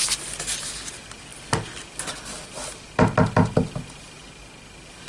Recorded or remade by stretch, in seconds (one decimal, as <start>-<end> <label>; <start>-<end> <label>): 0.0-5.1 recorded